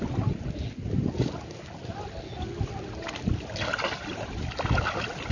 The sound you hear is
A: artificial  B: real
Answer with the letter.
B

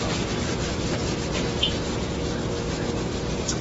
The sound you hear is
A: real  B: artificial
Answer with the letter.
A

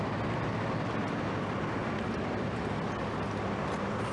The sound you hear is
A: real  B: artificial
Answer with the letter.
A